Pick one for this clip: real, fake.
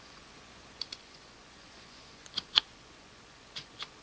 fake